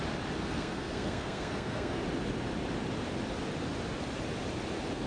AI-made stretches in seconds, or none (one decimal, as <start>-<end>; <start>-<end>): 0.4-2.0